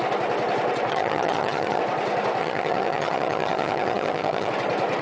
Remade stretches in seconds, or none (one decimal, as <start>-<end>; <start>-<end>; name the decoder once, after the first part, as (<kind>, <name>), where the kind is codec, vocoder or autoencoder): 0.9-1.8 (vocoder, HiFi-GAN); 2.4-4.5